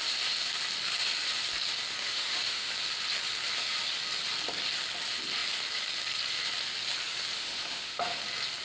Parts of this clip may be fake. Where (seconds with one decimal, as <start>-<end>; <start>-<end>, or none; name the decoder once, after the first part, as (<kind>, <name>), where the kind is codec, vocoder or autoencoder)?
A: 2.0-2.7 (autoencoder, DAC-VAE); 7.4-8.2